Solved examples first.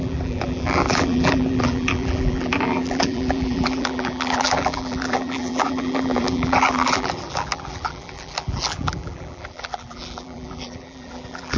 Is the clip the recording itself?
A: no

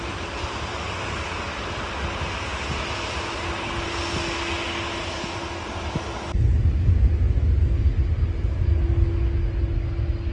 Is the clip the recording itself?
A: yes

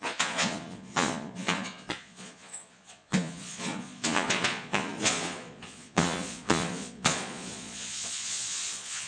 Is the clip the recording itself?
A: no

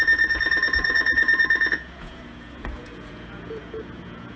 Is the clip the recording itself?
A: no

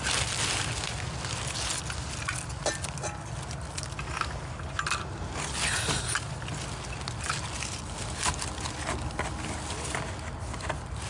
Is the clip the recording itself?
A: yes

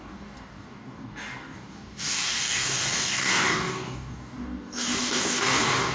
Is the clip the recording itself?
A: no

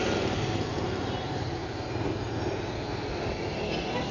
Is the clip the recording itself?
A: yes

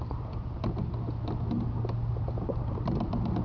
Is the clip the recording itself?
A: yes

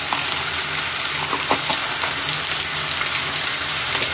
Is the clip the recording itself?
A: yes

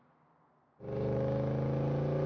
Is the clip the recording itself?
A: yes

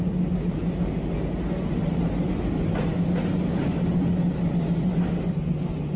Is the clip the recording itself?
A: yes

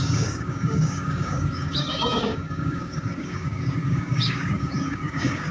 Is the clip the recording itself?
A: no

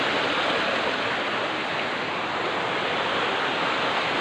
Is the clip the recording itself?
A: yes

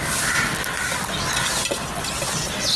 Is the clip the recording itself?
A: yes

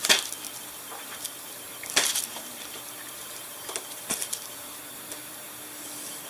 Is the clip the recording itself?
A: no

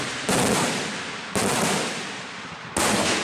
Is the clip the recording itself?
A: yes